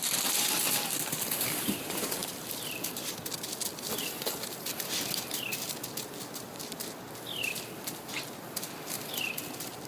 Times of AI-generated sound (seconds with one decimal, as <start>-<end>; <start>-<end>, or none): 0.0-5.5; 6.0-9.9